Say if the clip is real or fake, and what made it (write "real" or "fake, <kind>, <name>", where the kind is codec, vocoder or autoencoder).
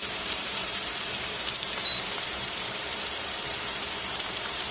fake, vocoder, BigVGAN v2